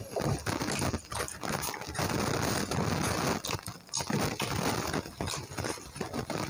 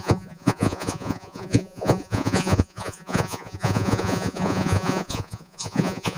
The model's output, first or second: second